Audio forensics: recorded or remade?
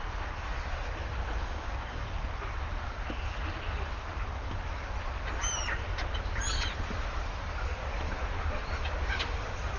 remade